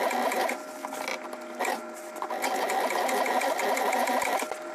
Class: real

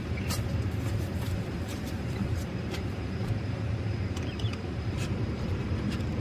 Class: fake